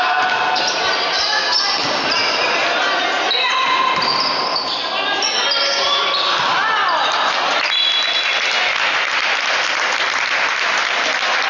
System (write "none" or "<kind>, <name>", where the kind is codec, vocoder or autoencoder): none